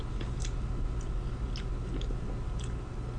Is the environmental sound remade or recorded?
recorded